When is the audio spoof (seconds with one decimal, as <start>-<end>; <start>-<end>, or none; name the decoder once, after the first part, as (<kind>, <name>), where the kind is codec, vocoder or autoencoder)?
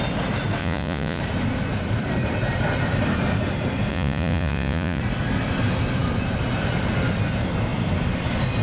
0.6-1.2 (vocoder, Vocos); 3.9-5.0